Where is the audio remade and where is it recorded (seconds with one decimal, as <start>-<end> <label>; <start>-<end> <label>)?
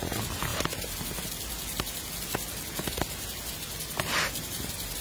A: 0.0-5.0 recorded